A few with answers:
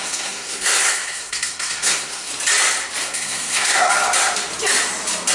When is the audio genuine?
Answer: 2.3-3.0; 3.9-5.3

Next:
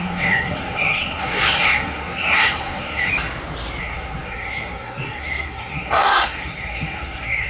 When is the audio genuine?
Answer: 3.1-3.8

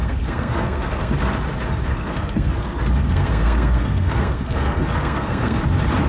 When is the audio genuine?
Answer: 1.1-1.9; 5.6-6.1

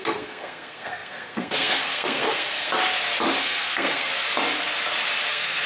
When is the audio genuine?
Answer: 2.7-3.4; 4.1-5.3